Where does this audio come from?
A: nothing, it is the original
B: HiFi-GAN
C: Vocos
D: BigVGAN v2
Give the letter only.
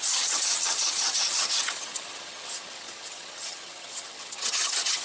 B